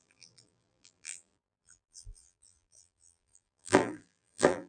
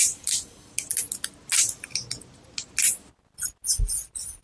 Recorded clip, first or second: second